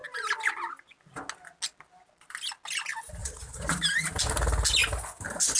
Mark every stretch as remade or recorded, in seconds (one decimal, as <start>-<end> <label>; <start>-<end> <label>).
0.0-3.2 recorded; 3.2-3.8 remade; 3.8-5.6 recorded